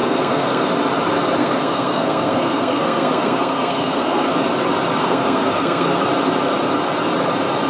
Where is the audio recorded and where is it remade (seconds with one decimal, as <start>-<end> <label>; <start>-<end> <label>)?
0.0-0.7 remade; 0.7-1.4 recorded; 1.4-4.3 remade; 4.3-5.0 recorded; 5.0-6.0 remade; 6.0-7.7 recorded